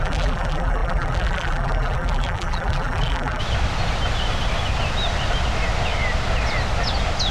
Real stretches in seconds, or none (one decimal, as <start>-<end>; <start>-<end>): 3.4-7.3